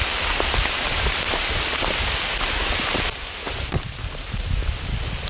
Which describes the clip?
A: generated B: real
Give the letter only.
B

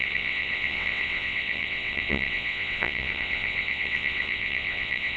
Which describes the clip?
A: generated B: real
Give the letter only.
A